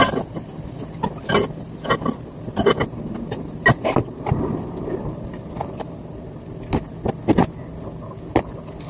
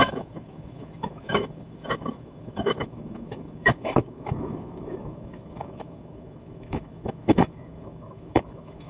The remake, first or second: second